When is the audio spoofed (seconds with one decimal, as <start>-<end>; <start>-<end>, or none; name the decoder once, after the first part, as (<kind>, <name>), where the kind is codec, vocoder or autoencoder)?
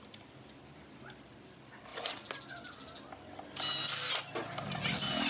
none